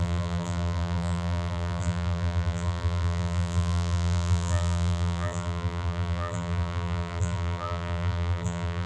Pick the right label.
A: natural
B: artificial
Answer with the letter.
B